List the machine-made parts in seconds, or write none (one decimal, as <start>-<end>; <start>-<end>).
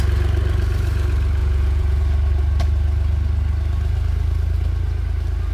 1.4-2.0